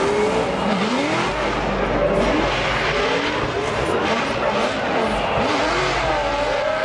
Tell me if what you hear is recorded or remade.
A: recorded